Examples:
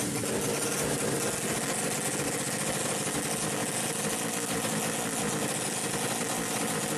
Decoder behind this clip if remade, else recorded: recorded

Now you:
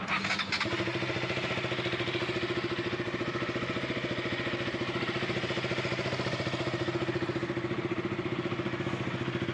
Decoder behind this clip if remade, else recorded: recorded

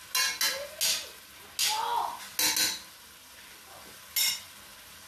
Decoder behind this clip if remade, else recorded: recorded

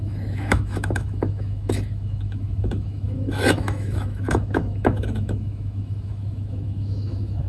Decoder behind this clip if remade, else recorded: remade, autoencoder, DAC-VAE